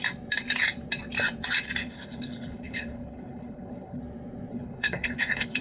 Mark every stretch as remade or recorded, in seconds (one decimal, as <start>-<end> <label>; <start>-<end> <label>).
0.0-1.8 recorded; 1.8-4.0 remade; 4.0-4.5 recorded; 4.5-5.6 remade